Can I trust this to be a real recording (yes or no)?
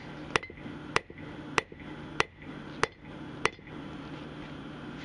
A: yes